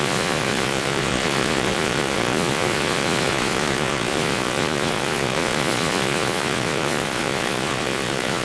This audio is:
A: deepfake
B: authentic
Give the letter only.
A